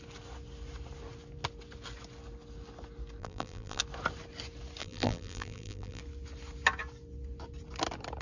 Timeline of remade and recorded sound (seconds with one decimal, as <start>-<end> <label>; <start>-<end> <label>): 0.0-3.2 recorded; 3.2-3.8 remade; 3.8-4.8 recorded; 4.8-6.0 remade; 6.0-8.2 recorded